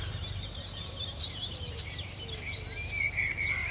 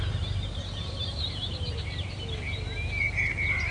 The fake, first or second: first